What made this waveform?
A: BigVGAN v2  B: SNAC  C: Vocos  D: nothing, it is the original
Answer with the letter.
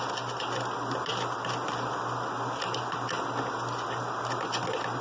D